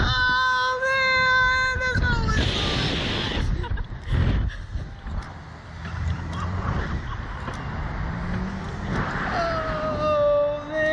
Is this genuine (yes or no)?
yes